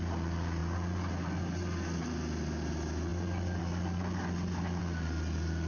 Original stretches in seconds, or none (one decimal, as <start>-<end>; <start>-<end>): 0.0-5.7